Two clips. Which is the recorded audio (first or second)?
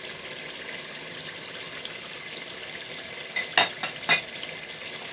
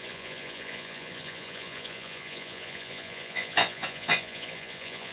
first